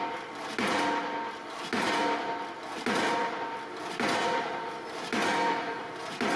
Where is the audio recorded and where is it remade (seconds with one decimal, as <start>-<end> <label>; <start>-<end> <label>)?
0.0-6.4 recorded

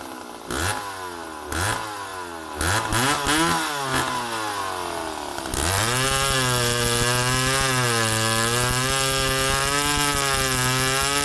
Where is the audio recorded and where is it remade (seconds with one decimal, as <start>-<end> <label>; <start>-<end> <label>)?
0.0-11.2 recorded

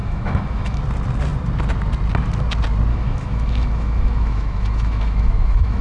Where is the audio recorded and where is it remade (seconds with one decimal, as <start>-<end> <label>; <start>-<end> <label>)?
0.0-0.8 remade; 0.8-2.9 recorded; 2.9-5.8 remade

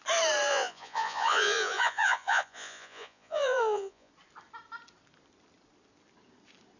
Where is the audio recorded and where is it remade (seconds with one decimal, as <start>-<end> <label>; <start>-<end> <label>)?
0.0-0.5 recorded; 0.5-4.1 remade; 4.1-6.8 recorded

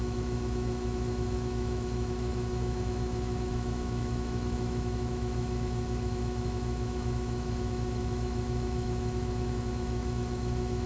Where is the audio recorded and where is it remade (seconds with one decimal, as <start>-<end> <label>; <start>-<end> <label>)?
0.0-10.9 remade